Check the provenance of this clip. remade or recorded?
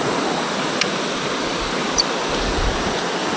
recorded